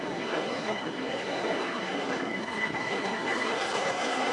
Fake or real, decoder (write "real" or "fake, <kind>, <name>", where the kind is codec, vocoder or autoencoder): fake, codec, SNAC